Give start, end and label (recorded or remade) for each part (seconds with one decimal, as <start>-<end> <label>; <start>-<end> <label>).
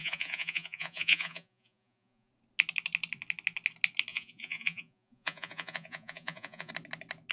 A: 0.0-2.3 remade; 2.3-4.1 recorded; 4.1-6.7 remade; 6.7-7.3 recorded